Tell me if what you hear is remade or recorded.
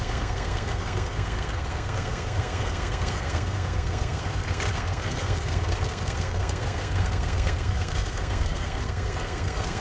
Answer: remade